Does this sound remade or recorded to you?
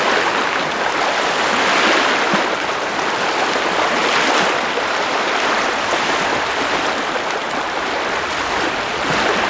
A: recorded